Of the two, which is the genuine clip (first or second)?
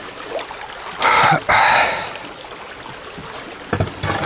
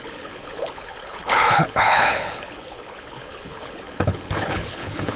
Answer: first